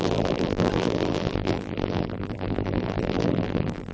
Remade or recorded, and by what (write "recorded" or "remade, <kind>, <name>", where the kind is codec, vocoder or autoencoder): remade, vocoder, BigVGAN v2